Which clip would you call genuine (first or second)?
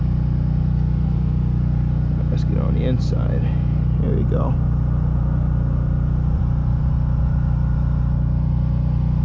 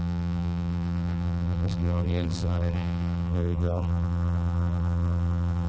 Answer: first